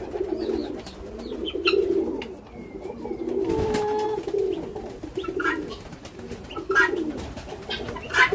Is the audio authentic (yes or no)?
yes